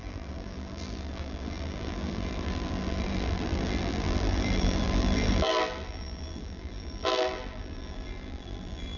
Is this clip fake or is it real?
fake